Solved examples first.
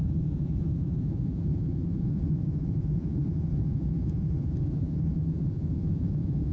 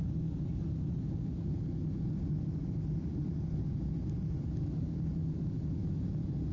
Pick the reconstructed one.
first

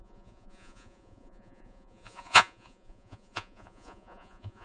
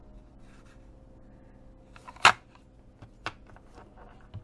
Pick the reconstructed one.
first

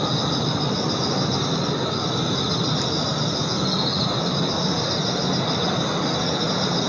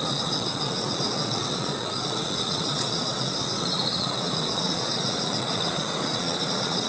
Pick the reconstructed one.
second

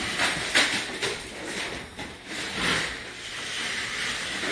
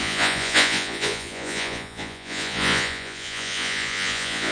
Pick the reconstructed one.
second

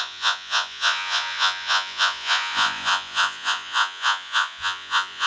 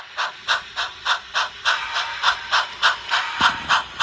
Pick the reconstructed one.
first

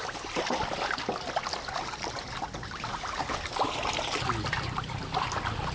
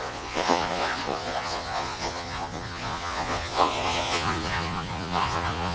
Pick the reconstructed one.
second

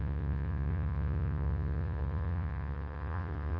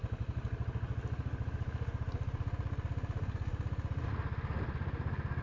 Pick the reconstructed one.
first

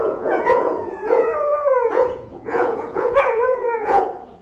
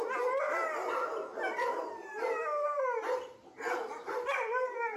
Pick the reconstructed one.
first